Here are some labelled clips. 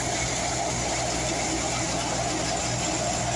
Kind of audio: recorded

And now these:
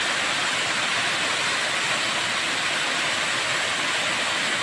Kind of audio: recorded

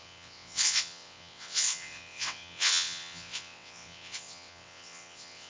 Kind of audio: remade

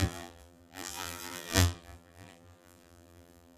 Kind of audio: remade